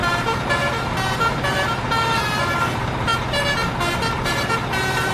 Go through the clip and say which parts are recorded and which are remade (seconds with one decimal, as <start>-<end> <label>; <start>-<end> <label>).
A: 0.0-3.1 remade; 3.1-4.0 recorded; 4.0-5.1 remade